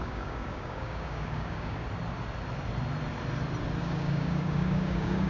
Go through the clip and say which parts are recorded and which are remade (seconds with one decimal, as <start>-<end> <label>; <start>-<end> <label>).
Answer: 0.0-1.8 remade; 1.8-3.8 recorded; 3.8-5.3 remade

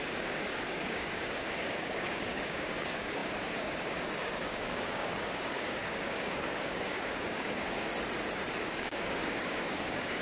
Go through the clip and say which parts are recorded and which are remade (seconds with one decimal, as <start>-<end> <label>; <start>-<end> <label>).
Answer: 0.0-7.9 remade; 7.9-8.5 recorded; 8.5-10.2 remade